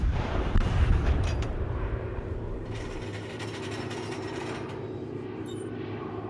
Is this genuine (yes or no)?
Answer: no